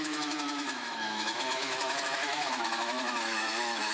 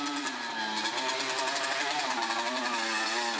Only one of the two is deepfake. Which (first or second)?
first